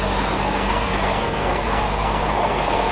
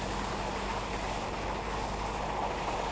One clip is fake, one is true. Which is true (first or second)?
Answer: second